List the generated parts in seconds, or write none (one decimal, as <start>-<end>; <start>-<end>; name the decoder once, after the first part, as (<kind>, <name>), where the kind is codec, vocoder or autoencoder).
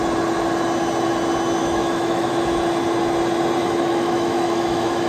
1.6-2.3 (autoencoder, DAC-VAE); 3.6-5.1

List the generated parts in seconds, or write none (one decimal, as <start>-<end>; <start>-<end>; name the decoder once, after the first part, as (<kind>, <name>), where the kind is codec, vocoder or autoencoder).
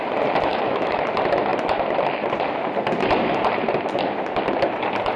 0.5-1.0 (autoencoder, DAC-VAE)